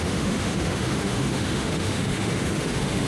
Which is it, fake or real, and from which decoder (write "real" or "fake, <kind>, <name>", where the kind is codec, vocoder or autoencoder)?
fake, autoencoder, DAC-VAE